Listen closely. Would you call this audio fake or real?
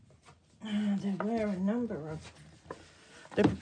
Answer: real